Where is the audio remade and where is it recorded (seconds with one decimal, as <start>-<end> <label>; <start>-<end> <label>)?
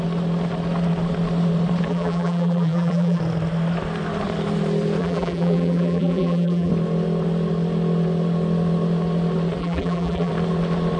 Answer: 0.0-1.9 recorded; 1.9-3.2 remade; 3.2-5.0 recorded; 5.0-6.7 remade; 6.7-9.6 recorded; 9.6-10.3 remade; 10.3-11.0 recorded